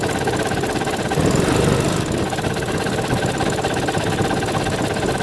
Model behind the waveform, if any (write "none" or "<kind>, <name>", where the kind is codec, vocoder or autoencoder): none